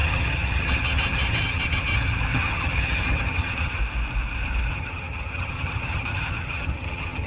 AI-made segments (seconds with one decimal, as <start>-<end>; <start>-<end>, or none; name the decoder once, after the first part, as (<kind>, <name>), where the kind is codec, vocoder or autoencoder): 0.0-3.8 (vocoder, HiFi-GAN); 4.7-7.3